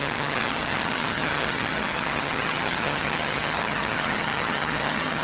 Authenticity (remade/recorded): remade